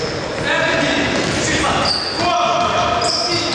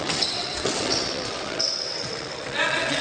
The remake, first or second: second